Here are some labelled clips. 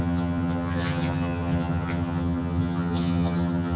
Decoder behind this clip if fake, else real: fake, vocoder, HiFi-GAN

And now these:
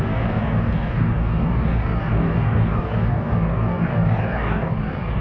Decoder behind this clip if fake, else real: fake, codec, DAC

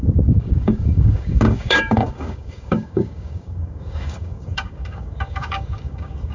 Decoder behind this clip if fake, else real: fake, codec, DAC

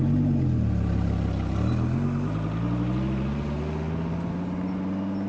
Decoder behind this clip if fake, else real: real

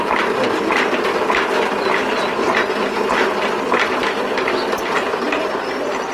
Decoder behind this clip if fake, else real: real